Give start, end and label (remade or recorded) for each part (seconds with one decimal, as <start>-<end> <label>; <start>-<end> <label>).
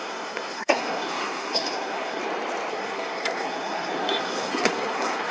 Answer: 0.0-2.2 remade; 2.2-2.7 recorded; 2.7-5.3 remade